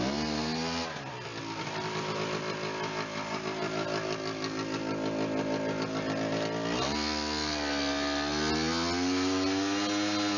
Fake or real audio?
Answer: real